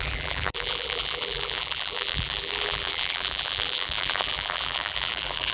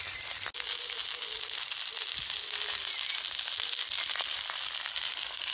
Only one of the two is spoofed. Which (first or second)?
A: first